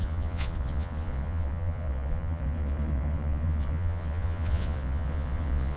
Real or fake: fake